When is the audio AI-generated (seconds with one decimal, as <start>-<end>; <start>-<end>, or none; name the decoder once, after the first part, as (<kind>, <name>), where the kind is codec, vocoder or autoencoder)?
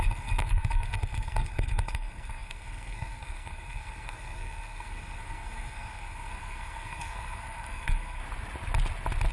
0.0-8.2 (codec, SNAC)